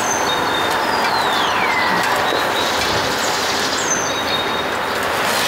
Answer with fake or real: real